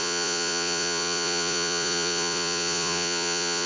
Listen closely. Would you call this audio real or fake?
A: fake